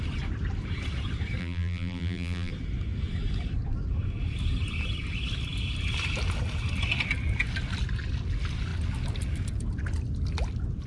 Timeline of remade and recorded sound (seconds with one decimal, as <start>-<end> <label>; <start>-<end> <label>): 0.0-1.4 recorded; 1.4-2.5 remade; 2.5-10.9 recorded